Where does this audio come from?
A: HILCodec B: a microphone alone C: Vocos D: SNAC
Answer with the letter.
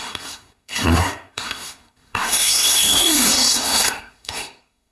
D